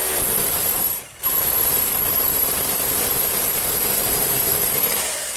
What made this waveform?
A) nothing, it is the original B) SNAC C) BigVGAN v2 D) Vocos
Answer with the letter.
C